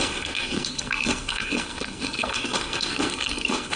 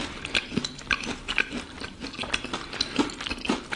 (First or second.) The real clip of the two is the second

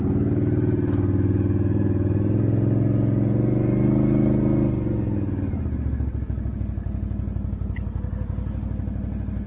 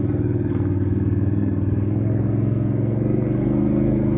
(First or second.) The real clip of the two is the first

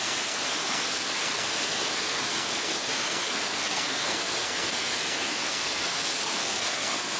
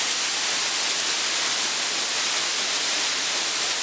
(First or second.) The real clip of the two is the second